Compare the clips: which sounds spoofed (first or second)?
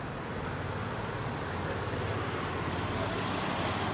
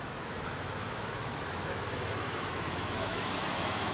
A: second